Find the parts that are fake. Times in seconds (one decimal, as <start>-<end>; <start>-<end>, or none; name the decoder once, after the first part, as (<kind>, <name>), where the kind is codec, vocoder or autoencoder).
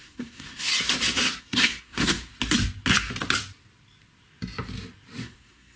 0.0-0.7 (codec, SNAC); 1.4-2.3; 5.2-5.8